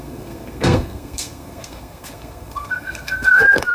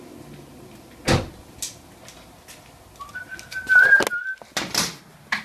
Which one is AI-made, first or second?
first